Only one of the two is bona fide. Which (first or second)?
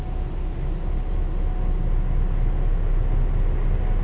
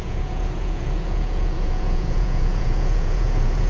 first